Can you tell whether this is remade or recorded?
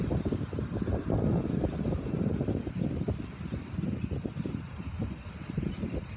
recorded